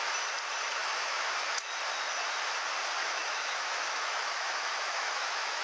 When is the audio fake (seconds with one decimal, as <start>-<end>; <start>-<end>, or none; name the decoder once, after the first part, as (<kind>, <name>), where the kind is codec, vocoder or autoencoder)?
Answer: 0.8-1.7 (autoencoder, DAC-VAE); 3.0-5.6